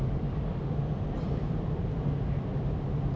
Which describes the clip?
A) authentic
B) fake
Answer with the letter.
A